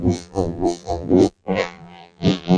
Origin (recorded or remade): remade